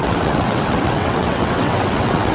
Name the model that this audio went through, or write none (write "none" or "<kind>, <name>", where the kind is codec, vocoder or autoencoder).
vocoder, WaveNeXt